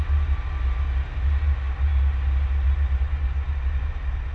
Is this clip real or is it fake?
real